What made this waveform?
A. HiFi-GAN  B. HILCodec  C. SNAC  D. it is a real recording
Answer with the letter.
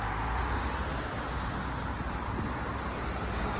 D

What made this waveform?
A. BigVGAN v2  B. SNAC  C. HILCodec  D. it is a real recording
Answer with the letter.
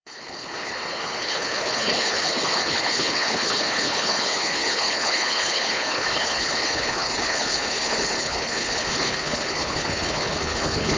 C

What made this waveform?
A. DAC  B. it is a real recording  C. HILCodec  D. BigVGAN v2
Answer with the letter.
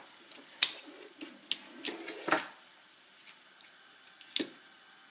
B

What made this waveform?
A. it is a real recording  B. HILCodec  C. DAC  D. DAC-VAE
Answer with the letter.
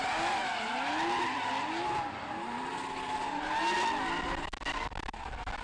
A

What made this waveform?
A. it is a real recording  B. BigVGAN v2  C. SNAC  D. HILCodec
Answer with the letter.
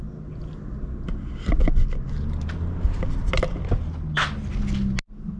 A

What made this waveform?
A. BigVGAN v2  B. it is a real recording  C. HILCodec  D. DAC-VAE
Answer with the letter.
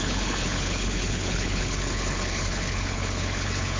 C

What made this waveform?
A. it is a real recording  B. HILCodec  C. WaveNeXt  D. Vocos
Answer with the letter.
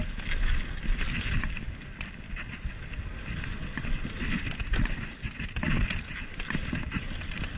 A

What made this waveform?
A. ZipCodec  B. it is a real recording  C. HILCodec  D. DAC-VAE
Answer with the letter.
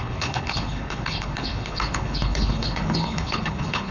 C